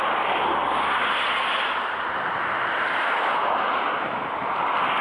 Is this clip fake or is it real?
real